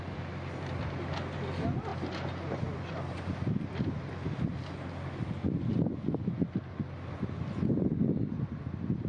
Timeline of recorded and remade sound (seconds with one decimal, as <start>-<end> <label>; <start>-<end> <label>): 0.0-9.1 recorded